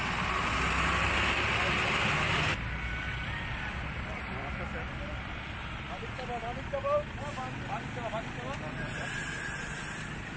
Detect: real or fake real